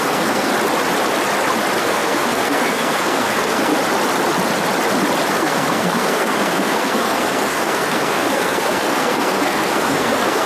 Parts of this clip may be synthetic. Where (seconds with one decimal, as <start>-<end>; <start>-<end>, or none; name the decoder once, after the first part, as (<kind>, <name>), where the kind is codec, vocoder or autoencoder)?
0.0-0.5 (codec, SNAC); 1.8-3.7; 5.3-10.5